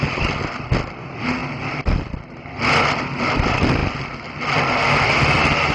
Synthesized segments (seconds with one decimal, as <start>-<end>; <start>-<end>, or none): none